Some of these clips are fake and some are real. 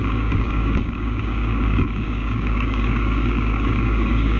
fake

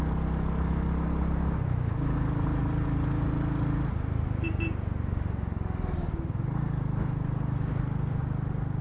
real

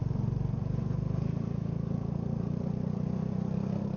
real